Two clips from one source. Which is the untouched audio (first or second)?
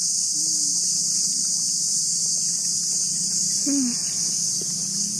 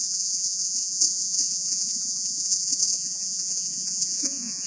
first